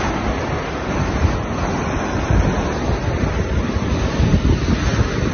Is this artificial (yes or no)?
no